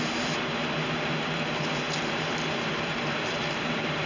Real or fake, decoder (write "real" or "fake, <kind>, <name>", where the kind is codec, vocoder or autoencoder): fake, vocoder, BigVGAN v2